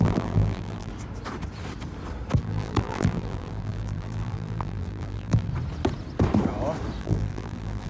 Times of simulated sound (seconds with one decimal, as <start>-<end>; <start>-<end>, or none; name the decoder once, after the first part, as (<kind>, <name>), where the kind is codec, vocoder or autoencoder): 0.0-0.9 (vocoder, BigVGAN v2); 2.4-5.5; 7.0-7.9